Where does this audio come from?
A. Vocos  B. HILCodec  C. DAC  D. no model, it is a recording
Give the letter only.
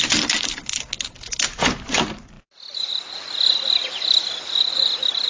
D